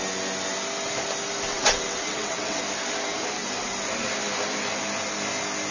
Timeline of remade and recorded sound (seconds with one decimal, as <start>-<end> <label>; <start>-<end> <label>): 0.0-1.5 recorded; 1.5-2.6 remade; 2.6-5.7 recorded